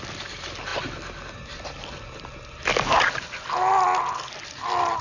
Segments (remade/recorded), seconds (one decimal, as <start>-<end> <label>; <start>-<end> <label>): 0.0-5.0 recorded